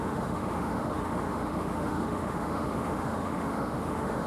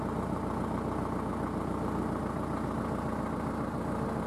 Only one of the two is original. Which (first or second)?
second